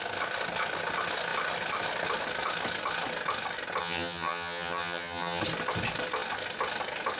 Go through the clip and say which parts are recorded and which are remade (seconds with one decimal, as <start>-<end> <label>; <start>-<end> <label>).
0.0-3.8 recorded; 3.8-5.4 remade; 5.4-7.2 recorded

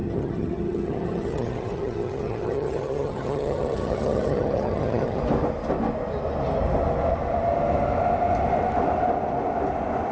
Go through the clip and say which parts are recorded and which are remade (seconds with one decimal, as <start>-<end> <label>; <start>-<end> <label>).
0.0-5.2 remade; 5.2-10.1 recorded

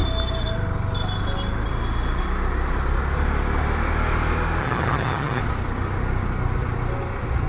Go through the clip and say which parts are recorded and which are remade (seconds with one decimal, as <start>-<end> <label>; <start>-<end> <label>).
0.0-4.6 recorded; 4.6-5.4 remade; 5.4-7.5 recorded

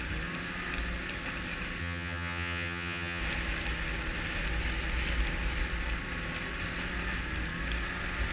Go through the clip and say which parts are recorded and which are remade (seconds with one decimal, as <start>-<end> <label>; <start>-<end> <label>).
0.0-1.8 recorded; 1.8-3.2 remade; 3.2-8.3 recorded

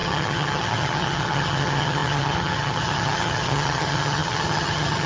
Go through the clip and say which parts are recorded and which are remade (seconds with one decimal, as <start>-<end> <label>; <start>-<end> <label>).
0.0-5.1 remade

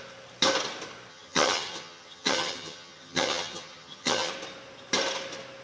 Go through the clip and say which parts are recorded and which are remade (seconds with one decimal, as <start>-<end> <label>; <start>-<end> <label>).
0.0-1.1 recorded; 1.1-4.3 remade; 4.3-5.6 recorded

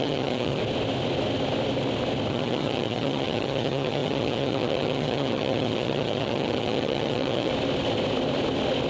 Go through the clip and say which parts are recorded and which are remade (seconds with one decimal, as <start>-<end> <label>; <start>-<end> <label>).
0.0-0.6 remade; 0.6-2.3 recorded; 2.3-7.5 remade; 7.5-8.9 recorded

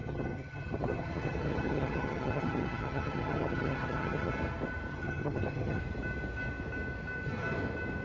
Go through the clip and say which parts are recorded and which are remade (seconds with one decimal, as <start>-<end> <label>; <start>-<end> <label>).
0.0-4.3 remade; 4.3-4.9 recorded; 4.9-5.8 remade; 5.8-8.0 recorded